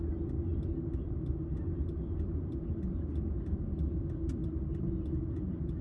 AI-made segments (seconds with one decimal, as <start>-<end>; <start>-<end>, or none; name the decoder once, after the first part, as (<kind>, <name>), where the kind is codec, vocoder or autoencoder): none